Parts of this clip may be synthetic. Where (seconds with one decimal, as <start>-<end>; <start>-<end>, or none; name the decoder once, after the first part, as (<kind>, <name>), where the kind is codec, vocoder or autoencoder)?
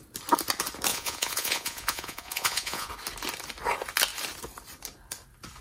0.9-2.9 (vocoder, Vocos)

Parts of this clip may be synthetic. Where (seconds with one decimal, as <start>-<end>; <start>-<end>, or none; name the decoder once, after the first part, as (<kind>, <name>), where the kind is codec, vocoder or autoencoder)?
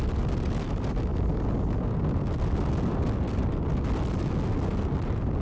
none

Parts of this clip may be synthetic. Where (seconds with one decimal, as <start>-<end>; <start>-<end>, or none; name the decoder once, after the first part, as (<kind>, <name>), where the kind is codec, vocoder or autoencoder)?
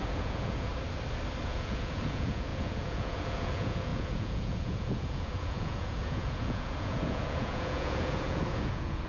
0.0-0.7 (vocoder, Vocos); 1.4-9.1